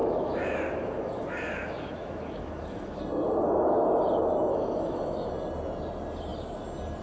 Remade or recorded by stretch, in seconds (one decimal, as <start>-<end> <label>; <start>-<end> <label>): 0.0-3.0 remade; 3.0-4.5 recorded; 4.5-5.3 remade; 5.3-7.0 recorded

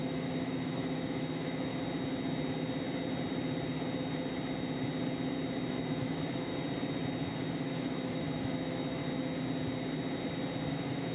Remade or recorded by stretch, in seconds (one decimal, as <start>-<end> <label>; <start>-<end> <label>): 0.0-1.7 remade; 1.7-5.7 recorded; 5.7-6.5 remade; 6.5-7.4 recorded; 7.4-9.0 remade; 9.0-10.7 recorded; 10.7-11.1 remade

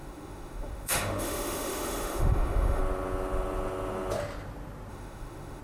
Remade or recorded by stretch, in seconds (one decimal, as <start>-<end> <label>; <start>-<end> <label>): 0.0-2.8 remade; 2.8-4.9 recorded; 4.9-5.6 remade

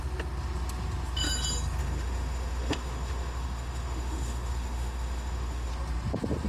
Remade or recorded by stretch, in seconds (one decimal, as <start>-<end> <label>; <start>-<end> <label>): 0.0-1.8 recorded; 1.8-5.7 remade; 5.7-6.5 recorded